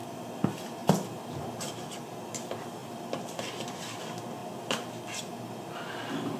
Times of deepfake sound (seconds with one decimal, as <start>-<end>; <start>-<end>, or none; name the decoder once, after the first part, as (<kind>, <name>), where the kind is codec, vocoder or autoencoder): 0.0-1.4 (vocoder, BigVGAN v2); 2.8-4.0